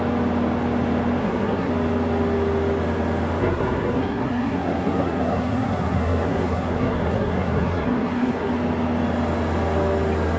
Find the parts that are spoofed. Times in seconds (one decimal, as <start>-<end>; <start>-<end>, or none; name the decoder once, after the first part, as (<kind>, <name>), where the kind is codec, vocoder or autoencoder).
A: 1.2-1.7 (codec, SNAC); 3.4-8.5